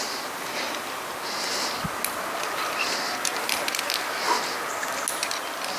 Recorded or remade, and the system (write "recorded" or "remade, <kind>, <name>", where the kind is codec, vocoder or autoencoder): recorded